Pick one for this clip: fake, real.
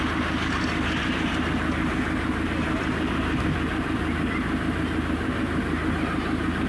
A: real